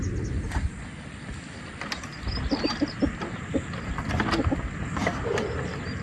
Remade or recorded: recorded